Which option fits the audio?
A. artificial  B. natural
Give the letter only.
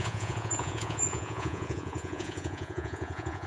A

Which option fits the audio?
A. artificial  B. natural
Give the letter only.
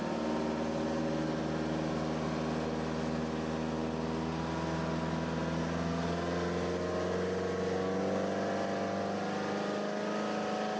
B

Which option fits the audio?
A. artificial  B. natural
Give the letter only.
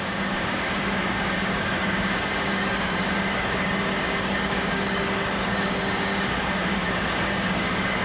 A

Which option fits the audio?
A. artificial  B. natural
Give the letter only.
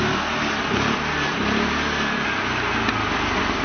B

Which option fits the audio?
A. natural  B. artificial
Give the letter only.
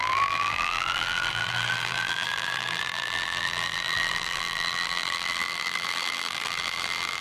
B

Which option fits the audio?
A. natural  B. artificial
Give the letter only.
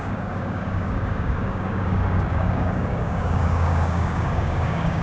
B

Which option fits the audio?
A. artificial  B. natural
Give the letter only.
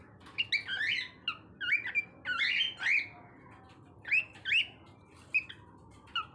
B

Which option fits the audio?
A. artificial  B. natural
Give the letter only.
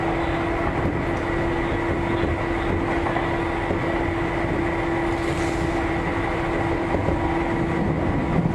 B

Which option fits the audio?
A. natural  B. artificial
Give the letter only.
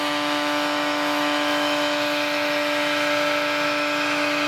B